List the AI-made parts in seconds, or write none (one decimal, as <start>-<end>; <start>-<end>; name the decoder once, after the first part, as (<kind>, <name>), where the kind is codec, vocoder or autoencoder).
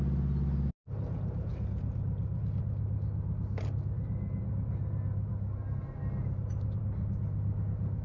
none